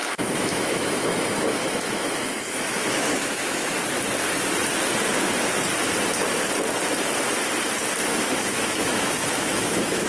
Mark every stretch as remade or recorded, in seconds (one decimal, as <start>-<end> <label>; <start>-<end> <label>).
0.0-3.8 remade; 3.8-8.1 recorded; 8.1-10.1 remade